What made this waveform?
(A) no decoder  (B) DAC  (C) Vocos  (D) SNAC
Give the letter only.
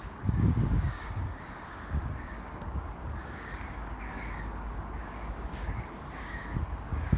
B